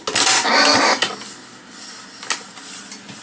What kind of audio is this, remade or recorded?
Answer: recorded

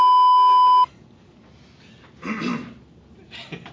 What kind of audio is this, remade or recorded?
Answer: recorded